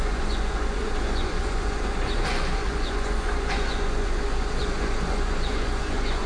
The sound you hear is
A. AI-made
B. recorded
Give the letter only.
A